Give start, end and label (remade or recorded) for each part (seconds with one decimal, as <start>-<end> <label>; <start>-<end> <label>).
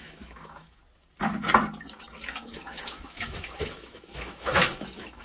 0.0-0.8 remade; 0.8-1.8 recorded; 1.8-5.2 remade